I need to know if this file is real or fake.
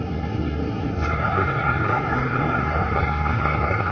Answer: fake